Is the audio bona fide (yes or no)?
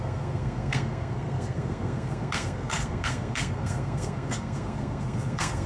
no